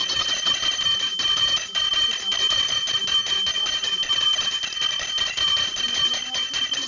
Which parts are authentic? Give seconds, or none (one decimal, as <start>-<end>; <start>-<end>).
0.6-6.9